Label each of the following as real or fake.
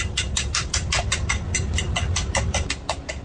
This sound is real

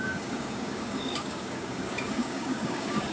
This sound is fake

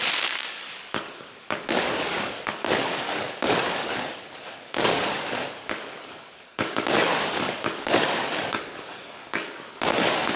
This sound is fake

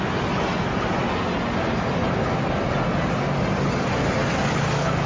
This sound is real